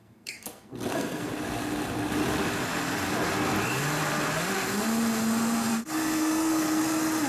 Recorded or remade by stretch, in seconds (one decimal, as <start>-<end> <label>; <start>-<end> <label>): 0.0-1.3 remade; 1.3-5.7 recorded; 5.7-6.8 remade; 6.8-7.3 recorded